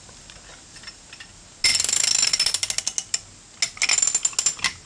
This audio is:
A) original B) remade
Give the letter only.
A